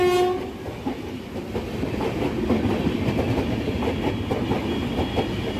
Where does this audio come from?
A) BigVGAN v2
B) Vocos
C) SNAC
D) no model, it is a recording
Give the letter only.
D